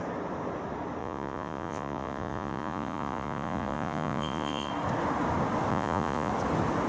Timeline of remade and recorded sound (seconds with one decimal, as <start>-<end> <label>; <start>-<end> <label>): 0.0-1.0 recorded; 1.0-4.7 remade; 4.7-5.7 recorded; 5.7-6.3 remade; 6.3-6.9 recorded